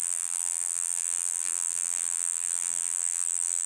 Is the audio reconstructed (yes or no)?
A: yes